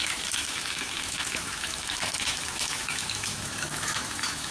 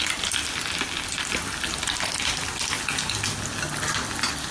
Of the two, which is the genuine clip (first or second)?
second